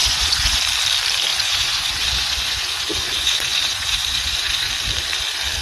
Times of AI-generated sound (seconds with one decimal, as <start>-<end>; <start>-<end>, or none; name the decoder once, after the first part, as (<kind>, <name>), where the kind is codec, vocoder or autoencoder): 0.0-0.6 (vocoder, Vocos); 1.3-4.7